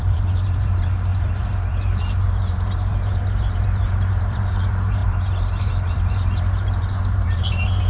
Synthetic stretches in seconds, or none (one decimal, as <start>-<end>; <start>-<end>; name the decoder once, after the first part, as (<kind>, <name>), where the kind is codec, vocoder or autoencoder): 0.0-7.9 (vocoder, BigVGAN v2)